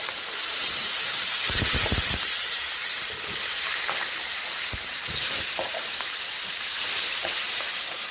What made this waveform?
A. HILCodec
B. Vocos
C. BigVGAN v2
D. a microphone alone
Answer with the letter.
C